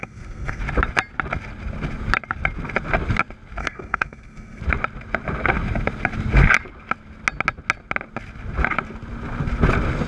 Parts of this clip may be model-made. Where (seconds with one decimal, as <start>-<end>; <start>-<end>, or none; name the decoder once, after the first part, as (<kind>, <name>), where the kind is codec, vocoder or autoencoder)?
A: 0.0-0.6 (codec, SNAC); 3.6-4.6